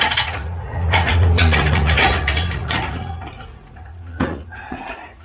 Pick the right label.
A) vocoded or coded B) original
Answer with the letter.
A